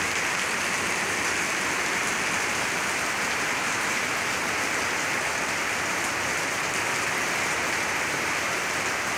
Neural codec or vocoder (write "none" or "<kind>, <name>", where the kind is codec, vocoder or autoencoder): none